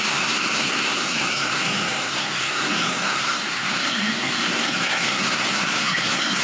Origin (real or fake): fake